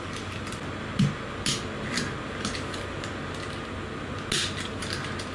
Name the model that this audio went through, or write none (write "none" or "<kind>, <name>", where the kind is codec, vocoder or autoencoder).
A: none